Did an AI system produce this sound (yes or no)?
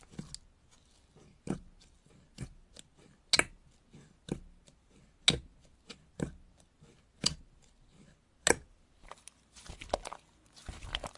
no